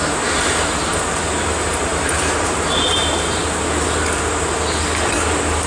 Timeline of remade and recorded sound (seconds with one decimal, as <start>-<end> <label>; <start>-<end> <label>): 0.0-3.4 remade; 3.4-5.7 recorded